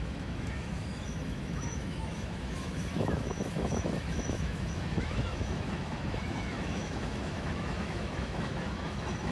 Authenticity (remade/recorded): remade